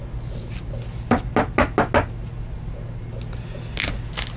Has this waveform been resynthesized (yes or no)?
no